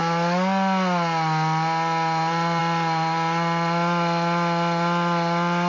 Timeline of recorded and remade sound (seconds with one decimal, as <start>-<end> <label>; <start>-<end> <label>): 0.0-5.7 recorded